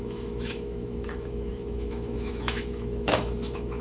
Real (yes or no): no